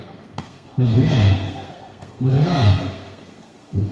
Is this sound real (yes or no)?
no